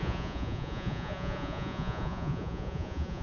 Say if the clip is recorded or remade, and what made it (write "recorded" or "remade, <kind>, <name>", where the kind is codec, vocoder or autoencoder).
remade, vocoder, Vocos